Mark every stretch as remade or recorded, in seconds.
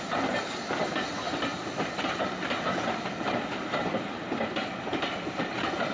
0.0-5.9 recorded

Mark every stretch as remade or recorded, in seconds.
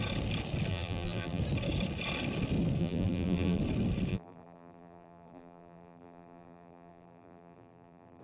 0.0-0.7 recorded; 0.7-1.4 remade; 1.4-2.8 recorded; 2.8-3.6 remade; 3.6-4.1 recorded; 4.1-8.2 remade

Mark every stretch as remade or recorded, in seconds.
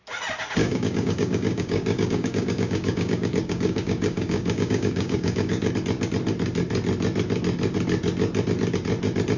0.0-0.6 recorded; 0.6-5.7 remade; 5.7-9.4 recorded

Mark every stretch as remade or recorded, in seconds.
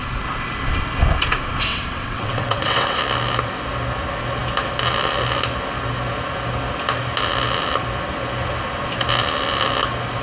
0.0-1.7 recorded; 1.7-3.0 remade; 3.0-10.2 recorded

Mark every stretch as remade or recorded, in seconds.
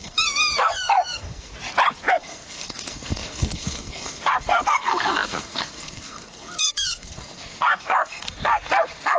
0.0-1.5 remade; 1.5-2.1 recorded; 2.1-9.2 remade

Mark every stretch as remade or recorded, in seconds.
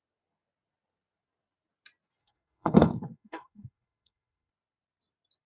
0.0-2.2 recorded; 2.2-4.5 remade; 4.5-5.5 recorded